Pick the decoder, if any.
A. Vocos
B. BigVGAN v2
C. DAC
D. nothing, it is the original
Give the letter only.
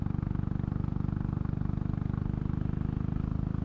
D